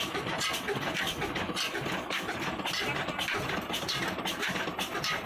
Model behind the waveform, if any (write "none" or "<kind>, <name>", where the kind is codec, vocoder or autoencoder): none